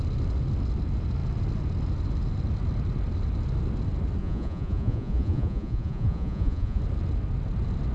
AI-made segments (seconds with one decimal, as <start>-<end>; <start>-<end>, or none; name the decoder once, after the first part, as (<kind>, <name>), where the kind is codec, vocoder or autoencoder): 4.2-6.8 (vocoder, Vocos)